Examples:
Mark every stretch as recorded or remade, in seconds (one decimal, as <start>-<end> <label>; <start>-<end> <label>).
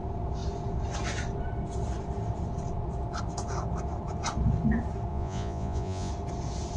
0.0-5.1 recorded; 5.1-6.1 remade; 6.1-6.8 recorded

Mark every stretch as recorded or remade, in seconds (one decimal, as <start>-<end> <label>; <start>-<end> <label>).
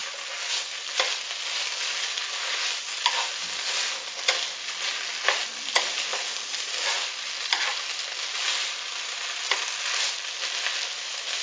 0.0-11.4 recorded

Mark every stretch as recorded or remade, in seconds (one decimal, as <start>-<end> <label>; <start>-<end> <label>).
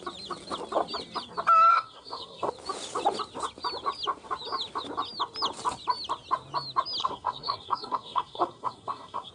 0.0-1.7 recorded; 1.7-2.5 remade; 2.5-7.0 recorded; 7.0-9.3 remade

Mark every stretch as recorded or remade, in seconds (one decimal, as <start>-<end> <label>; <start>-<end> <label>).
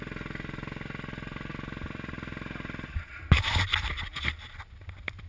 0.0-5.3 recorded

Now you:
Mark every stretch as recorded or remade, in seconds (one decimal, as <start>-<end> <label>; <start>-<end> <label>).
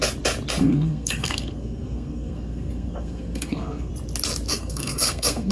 0.0-0.6 recorded; 0.6-3.9 remade; 3.9-4.5 recorded; 4.5-5.5 remade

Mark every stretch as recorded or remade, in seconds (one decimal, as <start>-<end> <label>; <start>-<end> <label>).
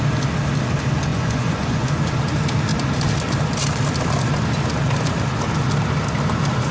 0.0-1.1 recorded; 1.1-2.0 remade; 2.0-6.7 recorded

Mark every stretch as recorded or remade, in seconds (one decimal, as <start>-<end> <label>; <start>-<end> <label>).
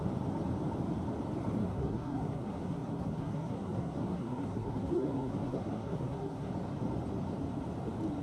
0.0-1.6 recorded; 1.6-6.5 remade; 6.5-8.2 recorded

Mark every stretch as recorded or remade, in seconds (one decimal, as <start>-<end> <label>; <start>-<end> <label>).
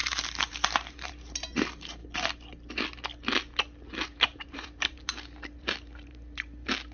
0.0-2.0 remade; 2.0-4.0 recorded; 4.0-6.9 remade